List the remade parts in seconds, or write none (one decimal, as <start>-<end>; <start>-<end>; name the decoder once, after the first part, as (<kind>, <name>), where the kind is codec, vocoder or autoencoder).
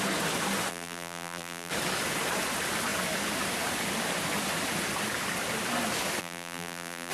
0.7-1.7 (vocoder, BigVGAN v2); 6.2-7.1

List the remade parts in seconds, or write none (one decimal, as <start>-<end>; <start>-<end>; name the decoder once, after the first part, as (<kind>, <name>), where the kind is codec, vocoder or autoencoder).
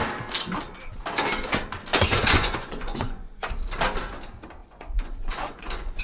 1.9-3.5 (vocoder, Vocos); 4.6-6.0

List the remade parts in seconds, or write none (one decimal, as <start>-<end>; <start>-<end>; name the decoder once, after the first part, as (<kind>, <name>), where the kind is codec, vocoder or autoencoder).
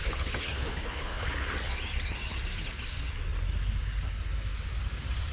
0.0-1.3 (codec, HILCodec)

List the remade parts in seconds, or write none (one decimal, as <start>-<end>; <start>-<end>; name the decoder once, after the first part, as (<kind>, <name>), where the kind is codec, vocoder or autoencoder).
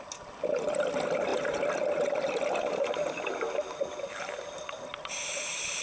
none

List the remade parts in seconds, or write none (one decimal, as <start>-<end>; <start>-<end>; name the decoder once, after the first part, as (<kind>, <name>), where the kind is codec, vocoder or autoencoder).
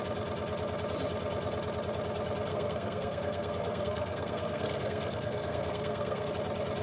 2.5-6.3 (codec, SNAC)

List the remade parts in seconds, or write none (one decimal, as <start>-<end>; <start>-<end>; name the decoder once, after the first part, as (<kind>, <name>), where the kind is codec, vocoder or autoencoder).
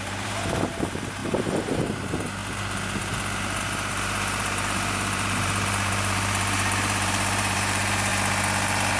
0.0-2.4 (vocoder, BigVGAN v2); 3.6-8.1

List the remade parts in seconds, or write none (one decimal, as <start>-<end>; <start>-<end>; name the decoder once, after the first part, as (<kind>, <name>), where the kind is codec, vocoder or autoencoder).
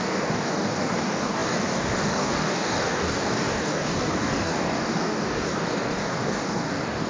0.0-7.1 (codec, DAC)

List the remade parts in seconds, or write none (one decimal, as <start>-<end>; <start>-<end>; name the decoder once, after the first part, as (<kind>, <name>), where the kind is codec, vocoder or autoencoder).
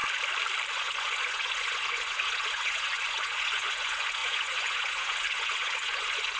0.7-6.4 (vocoder, Vocos)